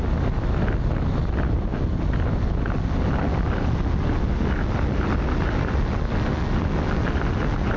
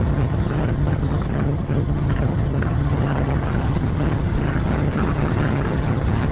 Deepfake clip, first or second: second